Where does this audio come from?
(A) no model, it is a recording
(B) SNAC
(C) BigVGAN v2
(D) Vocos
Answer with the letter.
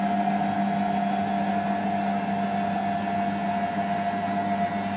A